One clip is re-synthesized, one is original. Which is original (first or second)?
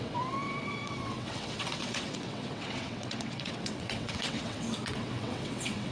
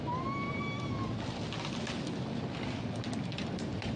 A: second